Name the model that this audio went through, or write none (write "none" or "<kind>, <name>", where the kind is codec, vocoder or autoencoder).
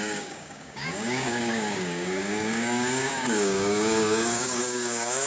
codec, DAC